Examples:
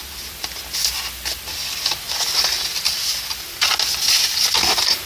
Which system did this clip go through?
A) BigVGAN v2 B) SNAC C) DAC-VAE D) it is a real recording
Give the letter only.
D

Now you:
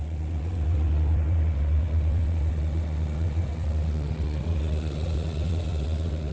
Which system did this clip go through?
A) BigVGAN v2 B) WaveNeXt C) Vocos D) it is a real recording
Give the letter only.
B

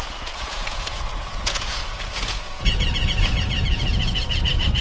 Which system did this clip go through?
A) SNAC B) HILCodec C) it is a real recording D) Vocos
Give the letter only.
D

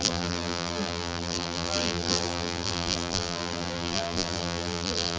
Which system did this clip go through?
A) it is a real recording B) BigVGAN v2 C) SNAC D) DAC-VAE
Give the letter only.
B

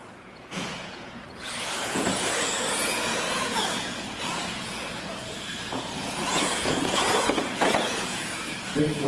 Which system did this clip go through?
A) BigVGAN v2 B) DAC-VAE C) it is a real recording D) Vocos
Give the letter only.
D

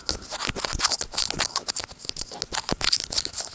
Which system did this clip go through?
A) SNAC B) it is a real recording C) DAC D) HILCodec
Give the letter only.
B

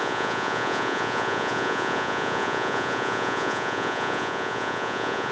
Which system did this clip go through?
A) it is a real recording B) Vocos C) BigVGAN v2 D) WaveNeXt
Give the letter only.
B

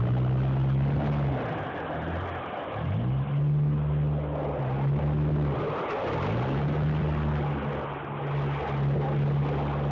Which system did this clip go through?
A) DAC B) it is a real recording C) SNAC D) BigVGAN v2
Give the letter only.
B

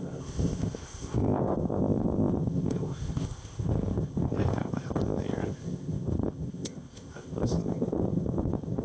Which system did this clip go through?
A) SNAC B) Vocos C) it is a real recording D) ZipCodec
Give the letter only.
D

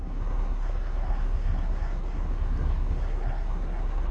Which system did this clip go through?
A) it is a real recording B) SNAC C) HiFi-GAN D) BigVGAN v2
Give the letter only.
B